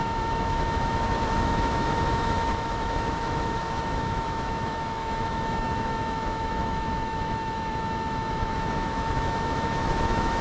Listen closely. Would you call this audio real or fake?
fake